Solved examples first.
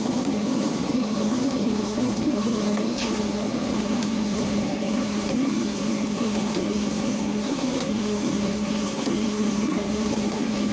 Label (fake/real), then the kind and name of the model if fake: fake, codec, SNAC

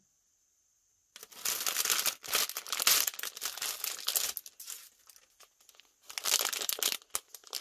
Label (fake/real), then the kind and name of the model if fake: real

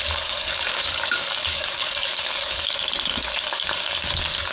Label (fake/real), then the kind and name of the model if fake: fake, codec, DAC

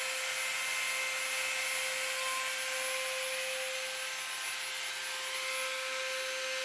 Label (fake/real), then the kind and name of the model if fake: real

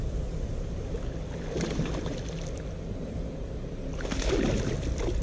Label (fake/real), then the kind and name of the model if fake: real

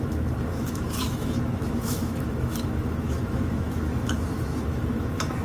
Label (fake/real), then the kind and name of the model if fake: fake, autoencoder, DAC-VAE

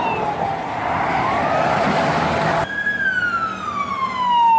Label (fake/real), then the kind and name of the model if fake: real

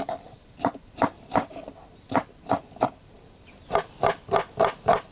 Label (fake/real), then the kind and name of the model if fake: fake, vocoder, BigVGAN v2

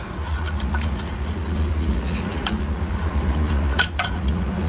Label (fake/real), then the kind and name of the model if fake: fake, vocoder, Vocos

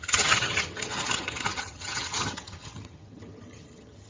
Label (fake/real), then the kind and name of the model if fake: fake, vocoder, HiFi-GAN